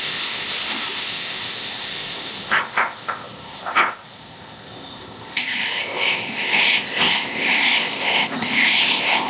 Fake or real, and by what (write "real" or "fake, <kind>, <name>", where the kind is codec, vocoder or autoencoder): fake, codec, ZipCodec